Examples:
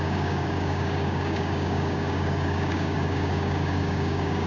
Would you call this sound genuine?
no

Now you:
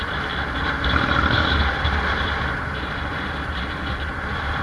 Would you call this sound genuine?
yes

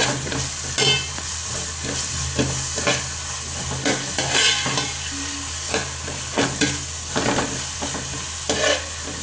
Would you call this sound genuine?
yes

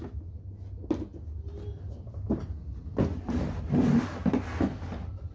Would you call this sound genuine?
yes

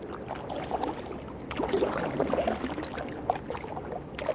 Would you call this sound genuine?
yes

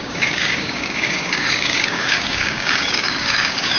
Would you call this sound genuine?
no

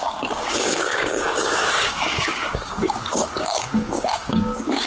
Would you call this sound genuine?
no